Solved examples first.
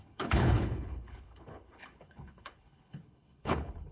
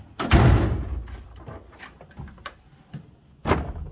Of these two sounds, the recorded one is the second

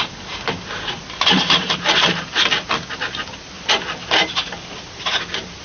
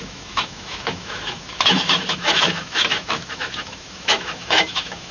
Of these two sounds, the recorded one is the first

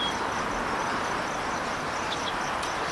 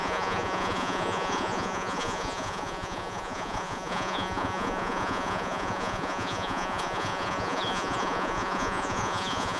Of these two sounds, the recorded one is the first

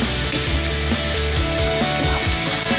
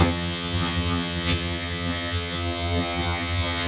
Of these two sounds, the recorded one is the first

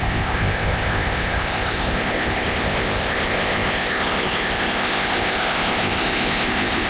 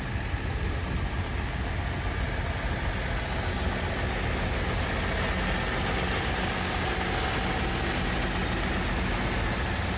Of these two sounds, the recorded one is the second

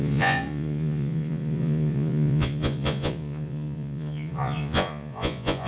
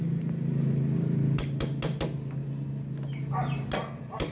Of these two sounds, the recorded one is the second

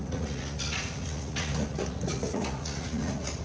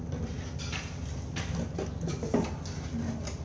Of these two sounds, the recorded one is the second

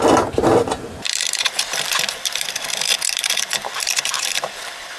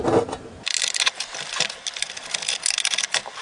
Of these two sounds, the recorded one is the second